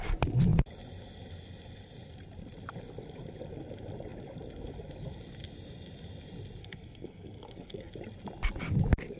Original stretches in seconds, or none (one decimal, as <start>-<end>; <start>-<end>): 0.0-6.6; 7.9-9.2